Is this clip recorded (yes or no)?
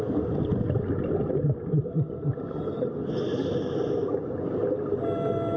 yes